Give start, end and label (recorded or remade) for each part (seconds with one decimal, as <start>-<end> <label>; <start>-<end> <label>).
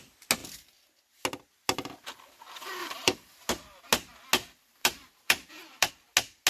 0.0-2.8 recorded; 2.8-3.5 remade; 3.5-4.8 recorded; 4.8-5.9 remade; 5.9-6.5 recorded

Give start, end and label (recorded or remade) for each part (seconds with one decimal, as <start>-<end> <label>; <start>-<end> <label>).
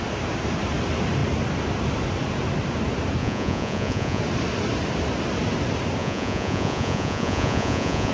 0.0-3.2 recorded; 3.2-4.2 remade; 4.2-6.0 recorded; 6.0-8.1 remade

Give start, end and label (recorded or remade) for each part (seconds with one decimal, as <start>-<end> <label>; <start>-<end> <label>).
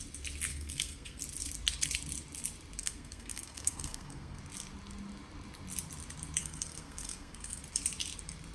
0.0-0.5 recorded; 0.5-1.2 remade; 1.2-2.8 recorded; 2.8-4.4 remade; 4.4-6.4 recorded; 6.4-7.6 remade; 7.6-8.5 recorded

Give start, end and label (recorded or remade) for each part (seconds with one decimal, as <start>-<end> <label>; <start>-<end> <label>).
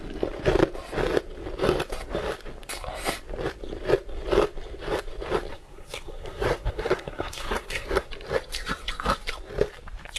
0.0-5.5 recorded; 5.5-8.1 remade; 8.1-10.2 recorded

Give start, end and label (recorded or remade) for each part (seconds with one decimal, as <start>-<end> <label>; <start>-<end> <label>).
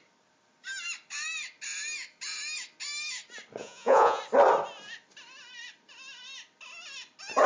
0.0-3.6 recorded; 3.6-4.2 remade; 4.2-7.5 recorded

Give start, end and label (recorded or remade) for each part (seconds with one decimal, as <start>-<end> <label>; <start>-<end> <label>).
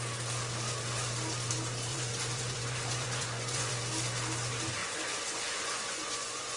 0.0-1.9 recorded; 1.9-3.7 remade; 3.7-4.8 recorded; 4.8-6.6 remade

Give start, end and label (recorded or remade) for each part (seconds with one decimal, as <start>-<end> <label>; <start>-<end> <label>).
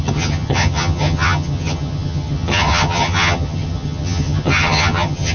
0.0-5.3 remade